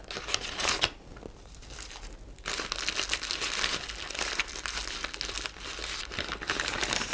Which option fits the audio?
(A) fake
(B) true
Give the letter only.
B